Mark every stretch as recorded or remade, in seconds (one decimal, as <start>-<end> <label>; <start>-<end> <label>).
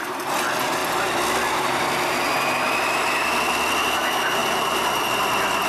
0.0-4.4 recorded; 4.4-5.2 remade; 5.2-5.7 recorded